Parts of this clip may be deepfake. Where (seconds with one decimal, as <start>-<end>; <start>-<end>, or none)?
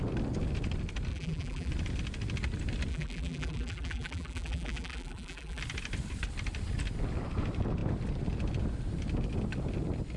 1.1-1.7; 2.9-5.6